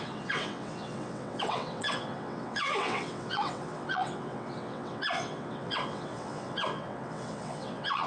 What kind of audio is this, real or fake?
fake